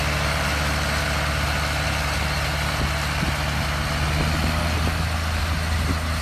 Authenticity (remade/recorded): recorded